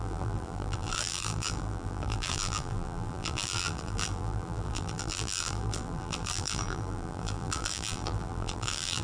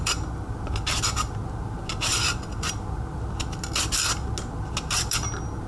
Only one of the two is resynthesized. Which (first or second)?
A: first